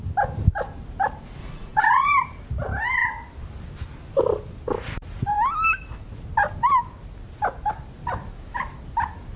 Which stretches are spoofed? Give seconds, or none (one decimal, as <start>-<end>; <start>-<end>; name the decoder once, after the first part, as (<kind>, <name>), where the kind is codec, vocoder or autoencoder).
1.4-2.1 (vocoder, Vocos)